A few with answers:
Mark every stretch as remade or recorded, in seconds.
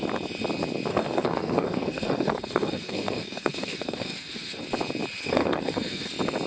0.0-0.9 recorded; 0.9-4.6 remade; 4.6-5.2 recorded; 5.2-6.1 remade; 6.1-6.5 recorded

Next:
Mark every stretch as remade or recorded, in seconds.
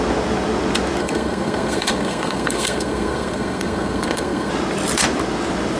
0.0-1.0 recorded; 1.0-4.5 remade; 4.5-5.8 recorded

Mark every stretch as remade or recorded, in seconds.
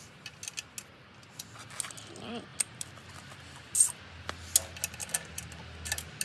0.0-6.2 recorded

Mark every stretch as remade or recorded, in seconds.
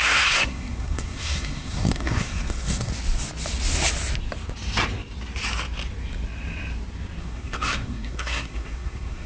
0.0-2.9 remade; 2.9-7.2 recorded; 7.2-9.3 remade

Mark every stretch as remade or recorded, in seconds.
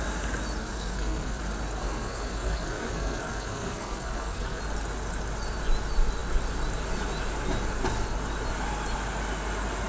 0.0-0.6 recorded; 0.6-1.4 remade; 1.4-1.8 recorded; 1.8-4.6 remade; 4.6-9.9 recorded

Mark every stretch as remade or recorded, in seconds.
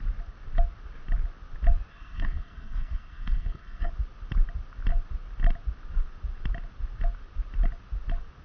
0.0-1.9 recorded; 1.9-3.9 remade; 3.9-8.4 recorded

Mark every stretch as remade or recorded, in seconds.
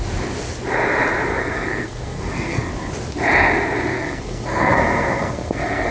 0.0-1.3 recorded; 1.3-2.7 remade; 2.7-3.9 recorded; 3.9-5.9 remade